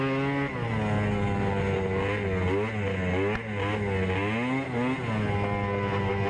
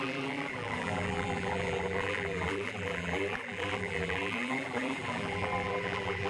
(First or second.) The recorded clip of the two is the first